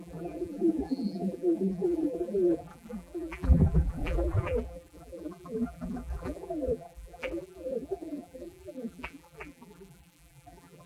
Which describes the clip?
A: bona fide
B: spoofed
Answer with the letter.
B